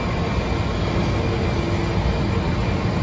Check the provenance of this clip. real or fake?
real